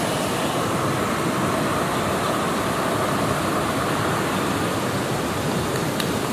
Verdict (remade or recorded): recorded